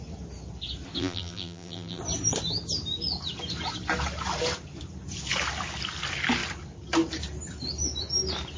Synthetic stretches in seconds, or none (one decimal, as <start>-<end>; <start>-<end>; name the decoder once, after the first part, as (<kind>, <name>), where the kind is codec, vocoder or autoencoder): 1.0-2.0 (vocoder, BigVGAN v2)